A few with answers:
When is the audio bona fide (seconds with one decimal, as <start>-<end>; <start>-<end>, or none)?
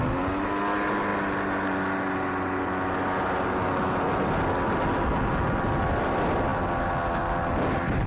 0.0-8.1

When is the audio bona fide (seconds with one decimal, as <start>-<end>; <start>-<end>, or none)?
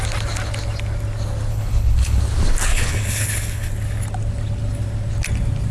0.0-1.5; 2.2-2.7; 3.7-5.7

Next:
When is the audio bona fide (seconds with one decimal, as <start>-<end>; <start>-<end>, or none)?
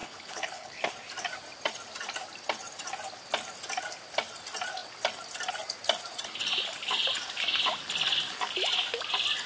0.9-9.5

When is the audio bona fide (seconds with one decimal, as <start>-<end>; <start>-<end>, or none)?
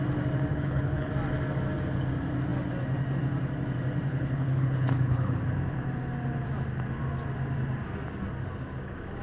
0.0-0.5; 1.1-4.1; 5.4-9.2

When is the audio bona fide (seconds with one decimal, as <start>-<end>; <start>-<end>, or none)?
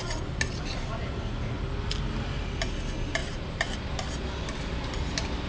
0.0-5.5